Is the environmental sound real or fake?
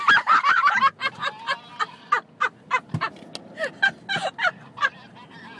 real